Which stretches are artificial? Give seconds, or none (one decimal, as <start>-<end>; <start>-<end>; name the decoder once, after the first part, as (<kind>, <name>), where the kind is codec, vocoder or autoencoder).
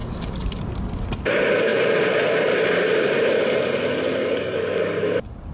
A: 0.0-0.6 (codec, DAC); 4.2-4.8